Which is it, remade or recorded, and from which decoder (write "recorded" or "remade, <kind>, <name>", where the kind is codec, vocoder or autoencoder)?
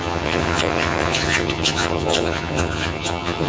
remade, vocoder, HiFi-GAN